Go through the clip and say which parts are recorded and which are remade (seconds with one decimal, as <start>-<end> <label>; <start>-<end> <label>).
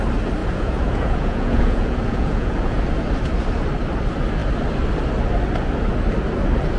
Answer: 0.0-0.4 recorded; 0.4-2.8 remade; 2.8-6.8 recorded